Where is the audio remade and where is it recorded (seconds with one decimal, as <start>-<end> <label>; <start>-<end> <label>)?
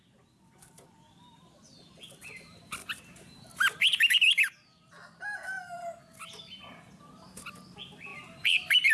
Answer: 0.0-8.9 recorded